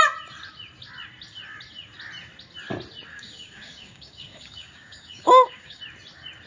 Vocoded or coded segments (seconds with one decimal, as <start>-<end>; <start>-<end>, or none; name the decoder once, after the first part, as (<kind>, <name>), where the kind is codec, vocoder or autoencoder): 3.1-5.8 (codec, DAC)